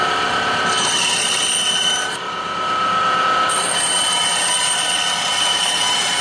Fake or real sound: real